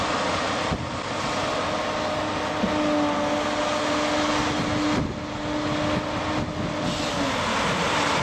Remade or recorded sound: recorded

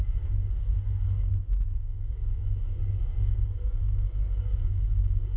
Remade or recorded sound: remade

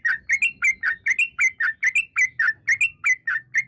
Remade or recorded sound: recorded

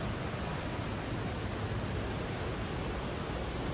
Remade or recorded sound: recorded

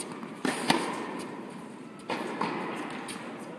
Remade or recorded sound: recorded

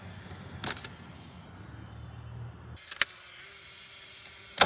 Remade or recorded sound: recorded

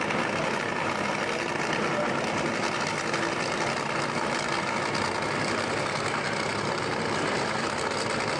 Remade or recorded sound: recorded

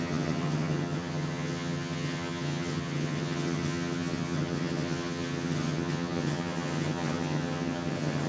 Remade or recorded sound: remade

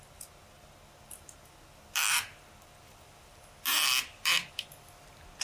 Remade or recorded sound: recorded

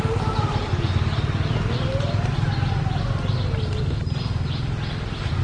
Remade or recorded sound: recorded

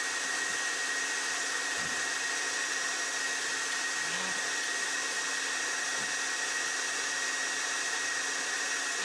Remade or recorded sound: recorded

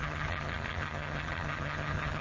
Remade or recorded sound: remade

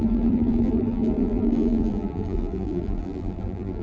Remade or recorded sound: remade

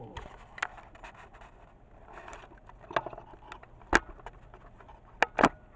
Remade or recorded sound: recorded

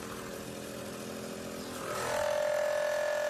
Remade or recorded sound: recorded